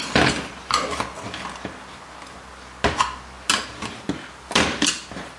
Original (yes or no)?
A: yes